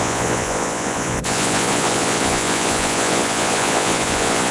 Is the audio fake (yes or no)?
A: yes